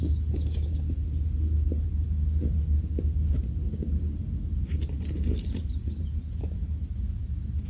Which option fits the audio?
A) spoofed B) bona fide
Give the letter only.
B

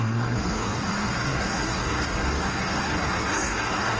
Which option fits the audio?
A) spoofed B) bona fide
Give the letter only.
A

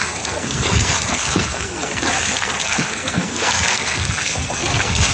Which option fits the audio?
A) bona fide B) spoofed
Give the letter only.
B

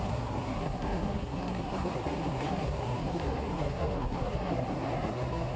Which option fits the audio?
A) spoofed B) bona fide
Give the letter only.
A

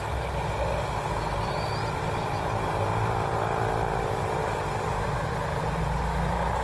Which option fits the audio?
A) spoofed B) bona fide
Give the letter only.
B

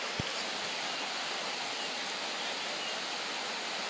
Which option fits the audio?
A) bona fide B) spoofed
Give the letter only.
A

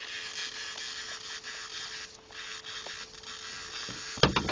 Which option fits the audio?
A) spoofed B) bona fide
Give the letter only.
B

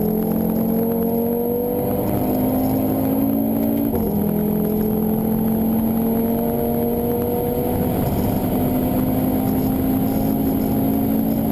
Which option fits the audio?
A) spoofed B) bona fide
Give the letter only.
B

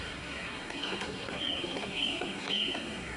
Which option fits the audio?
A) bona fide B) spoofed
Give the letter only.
B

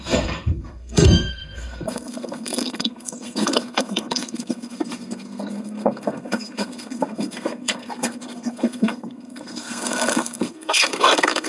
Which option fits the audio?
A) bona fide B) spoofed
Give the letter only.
B